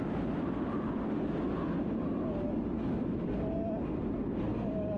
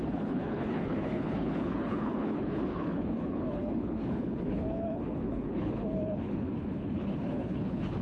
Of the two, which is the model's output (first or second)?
second